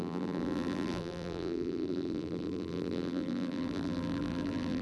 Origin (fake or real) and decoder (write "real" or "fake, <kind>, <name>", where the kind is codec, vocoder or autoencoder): fake, vocoder, BigVGAN v2